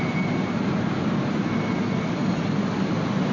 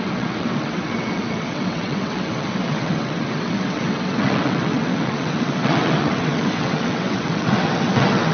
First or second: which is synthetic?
second